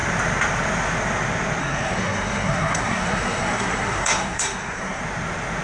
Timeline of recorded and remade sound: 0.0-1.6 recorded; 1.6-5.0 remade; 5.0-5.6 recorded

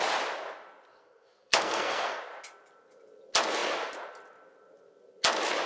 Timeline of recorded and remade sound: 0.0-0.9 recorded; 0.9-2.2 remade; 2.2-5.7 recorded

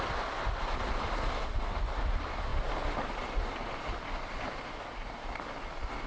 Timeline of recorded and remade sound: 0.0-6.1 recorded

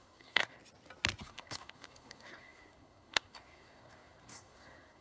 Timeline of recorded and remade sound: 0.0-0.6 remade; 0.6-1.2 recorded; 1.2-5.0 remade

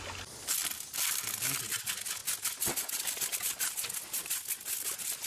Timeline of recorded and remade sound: 0.0-5.3 recorded

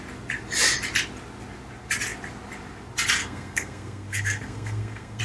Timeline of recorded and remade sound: 0.0-3.2 recorded; 3.2-5.2 remade